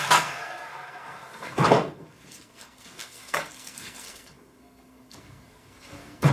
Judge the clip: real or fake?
fake